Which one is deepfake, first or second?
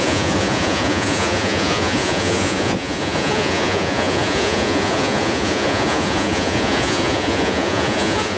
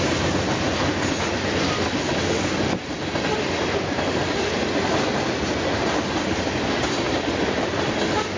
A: first